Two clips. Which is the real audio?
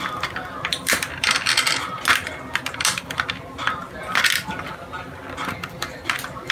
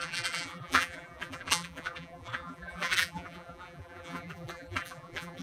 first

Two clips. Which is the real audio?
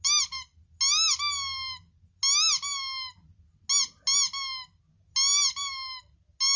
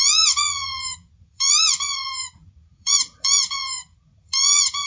first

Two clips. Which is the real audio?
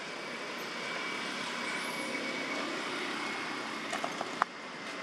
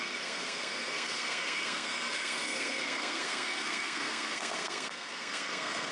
first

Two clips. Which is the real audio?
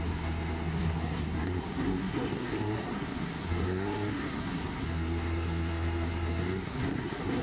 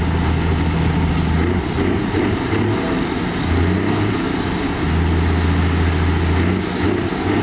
second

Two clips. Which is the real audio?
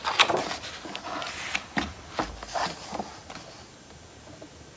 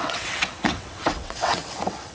first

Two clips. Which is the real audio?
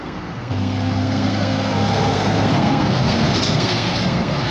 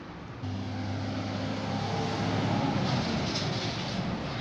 second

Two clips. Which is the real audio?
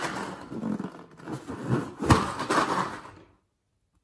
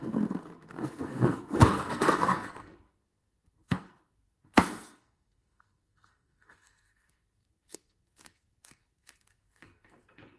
first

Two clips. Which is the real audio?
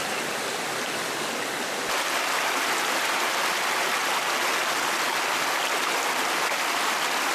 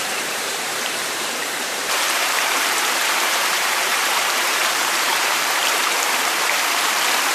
first